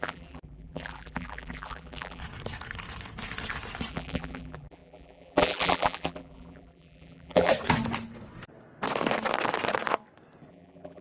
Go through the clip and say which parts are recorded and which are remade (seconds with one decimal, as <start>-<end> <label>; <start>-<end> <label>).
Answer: 0.0-2.2 remade; 2.2-3.9 recorded; 3.9-7.5 remade; 7.5-10.5 recorded; 10.5-11.0 remade